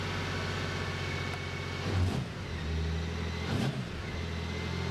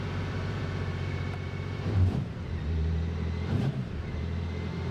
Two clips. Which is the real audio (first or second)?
first